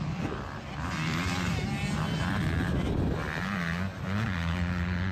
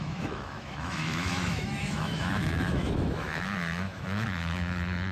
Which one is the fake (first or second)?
second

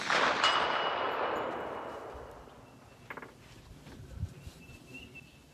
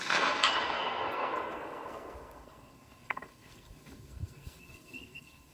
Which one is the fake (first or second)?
second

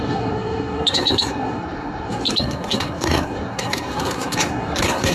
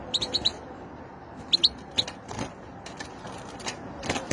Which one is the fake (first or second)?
first